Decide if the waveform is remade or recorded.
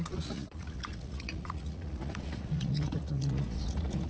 remade